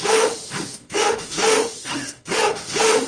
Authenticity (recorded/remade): remade